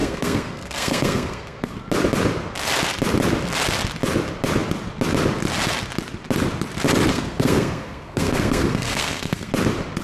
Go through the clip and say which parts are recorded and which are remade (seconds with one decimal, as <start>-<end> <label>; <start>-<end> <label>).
0.0-1.7 remade; 1.7-7.1 recorded; 7.1-9.5 remade; 9.5-10.0 recorded